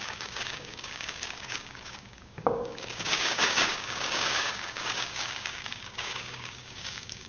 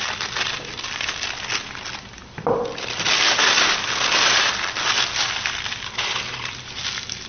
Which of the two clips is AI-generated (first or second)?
first